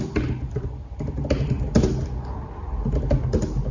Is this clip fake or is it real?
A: real